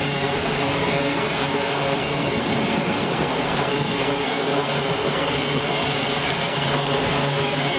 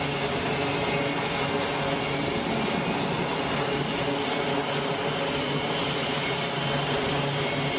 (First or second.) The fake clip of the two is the first